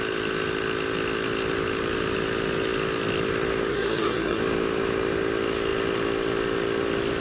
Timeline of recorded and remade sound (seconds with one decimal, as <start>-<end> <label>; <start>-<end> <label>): 0.0-3.7 recorded; 3.7-4.4 remade; 4.4-7.2 recorded